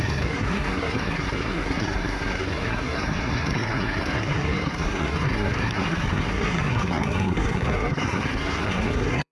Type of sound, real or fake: fake